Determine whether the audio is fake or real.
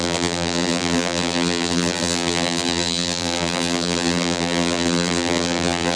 fake